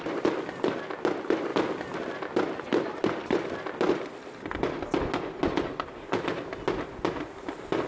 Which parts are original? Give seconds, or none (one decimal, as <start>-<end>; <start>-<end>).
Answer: 0.0-7.9